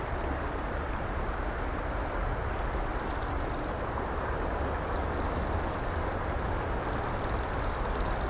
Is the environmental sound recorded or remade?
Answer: recorded